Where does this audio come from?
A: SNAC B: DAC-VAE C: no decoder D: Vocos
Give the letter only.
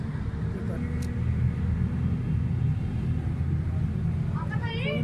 C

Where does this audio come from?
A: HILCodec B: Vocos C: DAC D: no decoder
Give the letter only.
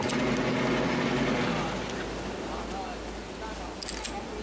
D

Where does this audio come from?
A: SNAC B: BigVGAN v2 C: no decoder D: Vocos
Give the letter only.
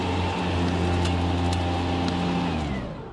C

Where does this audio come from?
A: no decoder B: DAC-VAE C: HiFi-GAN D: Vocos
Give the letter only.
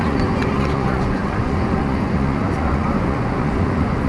D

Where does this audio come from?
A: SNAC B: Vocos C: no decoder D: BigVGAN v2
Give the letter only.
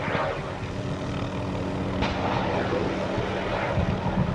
C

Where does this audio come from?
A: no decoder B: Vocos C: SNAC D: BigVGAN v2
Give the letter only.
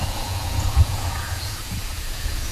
B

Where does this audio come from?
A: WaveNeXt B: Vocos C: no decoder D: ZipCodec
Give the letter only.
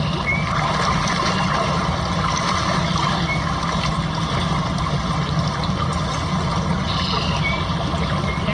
C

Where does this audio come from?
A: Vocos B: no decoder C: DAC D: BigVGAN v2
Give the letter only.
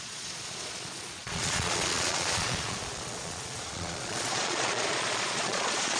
A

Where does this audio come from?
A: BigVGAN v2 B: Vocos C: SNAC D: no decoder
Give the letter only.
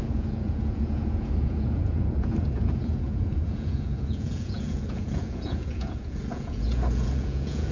B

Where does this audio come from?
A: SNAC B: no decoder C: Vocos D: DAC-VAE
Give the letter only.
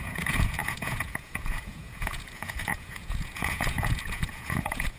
C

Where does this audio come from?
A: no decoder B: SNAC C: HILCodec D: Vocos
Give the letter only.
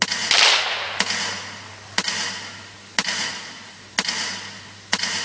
A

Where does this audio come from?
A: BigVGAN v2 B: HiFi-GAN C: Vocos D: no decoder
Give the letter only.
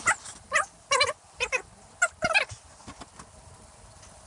D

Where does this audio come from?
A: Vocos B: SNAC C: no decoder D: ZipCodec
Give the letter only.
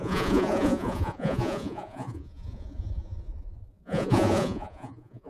A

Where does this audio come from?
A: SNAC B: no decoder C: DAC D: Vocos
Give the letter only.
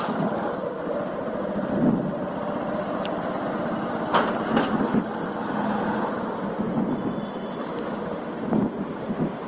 B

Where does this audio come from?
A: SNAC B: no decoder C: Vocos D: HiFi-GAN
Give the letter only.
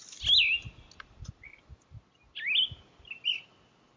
B